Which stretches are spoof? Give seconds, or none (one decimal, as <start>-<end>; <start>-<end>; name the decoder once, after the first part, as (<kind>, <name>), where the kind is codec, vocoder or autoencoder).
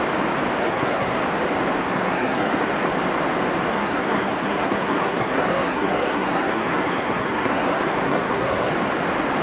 0.6-1.2 (codec, SNAC); 1.8-2.7; 3.7-8.7